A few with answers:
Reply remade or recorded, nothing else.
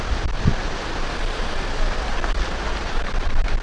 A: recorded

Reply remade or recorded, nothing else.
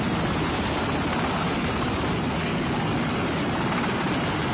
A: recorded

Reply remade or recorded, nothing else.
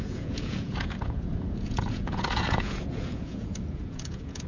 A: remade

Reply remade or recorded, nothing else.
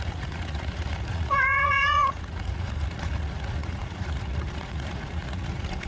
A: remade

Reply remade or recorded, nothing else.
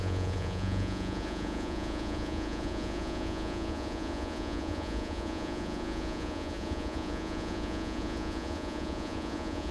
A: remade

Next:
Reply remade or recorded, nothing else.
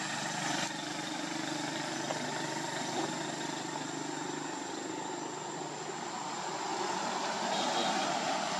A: recorded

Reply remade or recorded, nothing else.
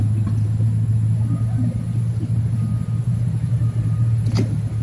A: recorded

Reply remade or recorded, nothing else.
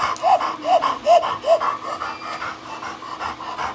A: recorded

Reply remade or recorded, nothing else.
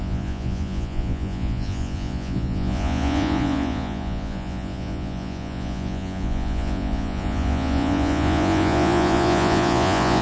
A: remade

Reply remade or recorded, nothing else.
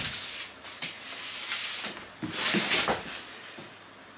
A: recorded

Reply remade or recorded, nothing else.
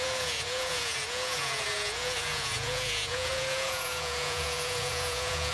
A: remade